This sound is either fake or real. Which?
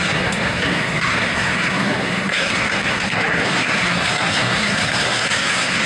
fake